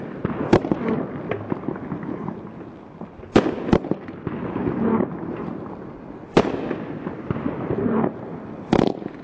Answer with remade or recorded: recorded